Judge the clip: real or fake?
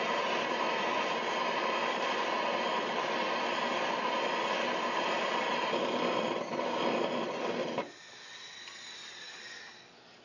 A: real